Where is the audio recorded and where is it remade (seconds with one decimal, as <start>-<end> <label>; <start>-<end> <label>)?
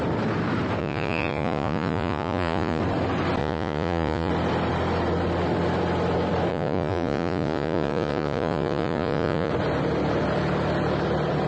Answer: 0.0-0.8 recorded; 0.8-2.8 remade; 2.8-3.4 recorded; 3.4-4.3 remade; 4.3-6.5 recorded; 6.5-9.5 remade; 9.5-11.5 recorded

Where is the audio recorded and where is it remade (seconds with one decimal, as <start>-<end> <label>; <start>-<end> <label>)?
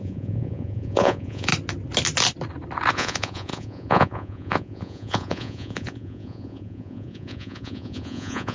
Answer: 0.0-1.5 remade; 1.5-2.9 recorded; 2.9-8.5 remade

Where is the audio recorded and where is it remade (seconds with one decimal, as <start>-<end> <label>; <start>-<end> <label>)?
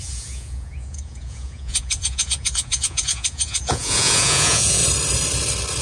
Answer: 0.0-4.8 remade; 4.8-5.8 recorded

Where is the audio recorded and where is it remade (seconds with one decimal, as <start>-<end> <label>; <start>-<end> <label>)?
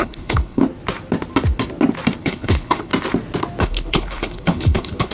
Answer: 0.0-0.6 remade; 0.6-2.2 recorded; 2.2-2.9 remade; 2.9-3.6 recorded; 3.6-5.1 remade